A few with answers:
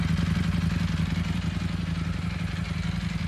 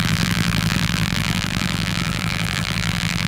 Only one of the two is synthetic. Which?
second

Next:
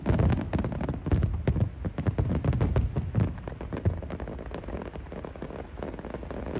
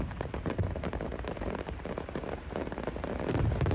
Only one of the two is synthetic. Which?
second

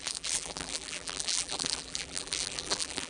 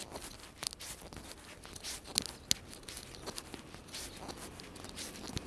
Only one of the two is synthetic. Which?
first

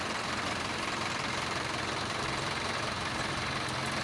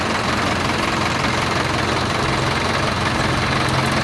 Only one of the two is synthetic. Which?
first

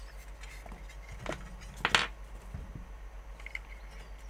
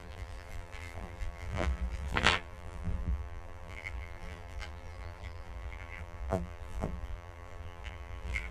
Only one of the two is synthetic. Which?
second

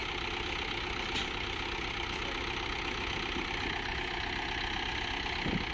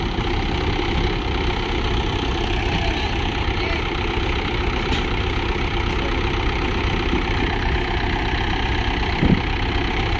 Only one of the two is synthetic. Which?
second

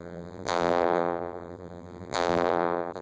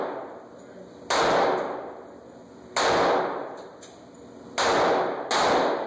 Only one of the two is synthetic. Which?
first